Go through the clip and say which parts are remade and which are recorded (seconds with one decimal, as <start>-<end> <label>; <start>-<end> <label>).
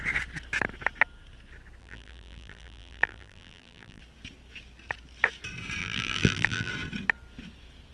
0.0-1.8 recorded; 1.8-4.0 remade; 4.0-5.8 recorded; 5.8-6.7 remade; 6.7-7.9 recorded